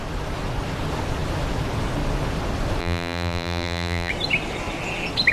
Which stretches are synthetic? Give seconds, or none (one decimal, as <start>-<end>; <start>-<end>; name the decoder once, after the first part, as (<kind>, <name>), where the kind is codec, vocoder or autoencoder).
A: 2.8-4.1 (vocoder, BigVGAN v2)